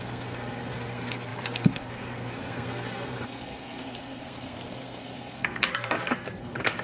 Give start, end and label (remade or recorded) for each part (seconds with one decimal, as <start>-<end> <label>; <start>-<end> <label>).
0.0-6.8 remade